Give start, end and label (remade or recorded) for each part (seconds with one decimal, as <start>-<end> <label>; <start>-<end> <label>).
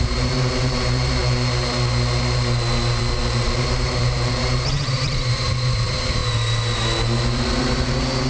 0.0-1.2 remade; 1.2-3.2 recorded; 3.2-6.2 remade; 6.2-7.6 recorded; 7.6-8.3 remade